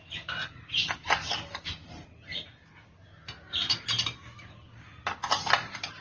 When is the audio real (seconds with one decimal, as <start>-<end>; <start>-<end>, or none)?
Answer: 0.0-6.0